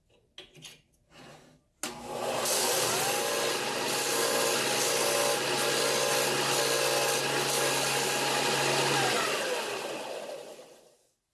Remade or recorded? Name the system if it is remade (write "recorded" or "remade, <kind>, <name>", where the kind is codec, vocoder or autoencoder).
recorded